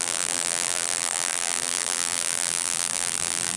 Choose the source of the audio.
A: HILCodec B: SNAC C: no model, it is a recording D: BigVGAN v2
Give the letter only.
D